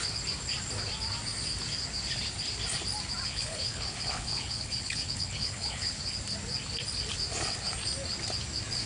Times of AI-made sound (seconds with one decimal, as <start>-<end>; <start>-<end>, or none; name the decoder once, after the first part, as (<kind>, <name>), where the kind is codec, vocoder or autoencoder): 3.3-6.0 (codec, HILCodec)